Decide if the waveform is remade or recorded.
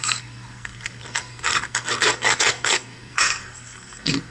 remade